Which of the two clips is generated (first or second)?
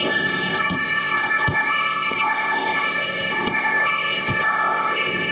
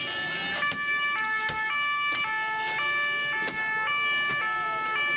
first